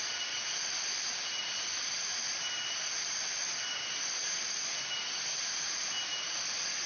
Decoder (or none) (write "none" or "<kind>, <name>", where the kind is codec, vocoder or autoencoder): none